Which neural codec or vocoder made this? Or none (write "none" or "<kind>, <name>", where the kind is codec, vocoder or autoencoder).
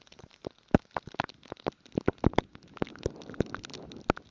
none